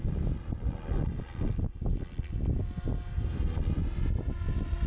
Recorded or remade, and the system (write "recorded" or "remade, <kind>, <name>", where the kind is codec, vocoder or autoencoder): recorded